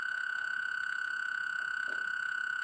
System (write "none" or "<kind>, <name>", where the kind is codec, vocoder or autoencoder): vocoder, Vocos